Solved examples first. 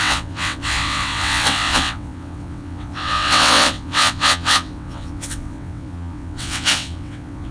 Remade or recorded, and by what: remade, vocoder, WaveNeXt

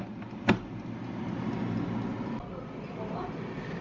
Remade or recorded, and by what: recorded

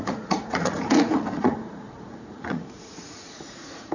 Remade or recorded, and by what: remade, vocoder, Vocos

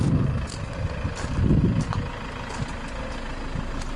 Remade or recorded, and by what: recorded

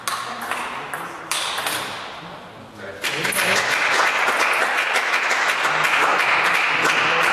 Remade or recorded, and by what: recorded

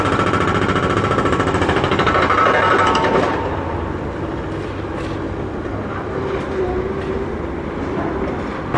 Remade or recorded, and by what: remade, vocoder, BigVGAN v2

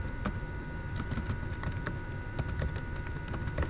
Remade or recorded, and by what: remade, vocoder, BigVGAN v2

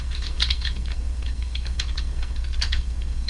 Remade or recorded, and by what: remade, codec, SNAC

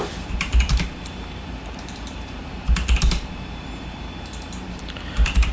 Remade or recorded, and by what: remade, vocoder, BigVGAN v2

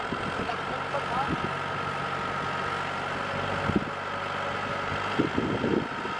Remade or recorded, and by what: recorded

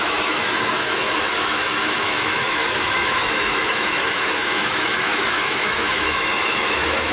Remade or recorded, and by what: remade, autoencoder, DAC-VAE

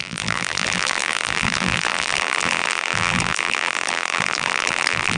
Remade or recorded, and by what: remade, vocoder, BigVGAN v2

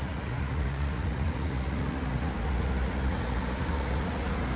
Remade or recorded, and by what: remade, vocoder, Vocos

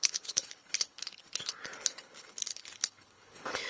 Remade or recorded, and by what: remade, codec, HILCodec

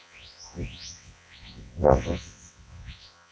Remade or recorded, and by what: remade, vocoder, WaveNeXt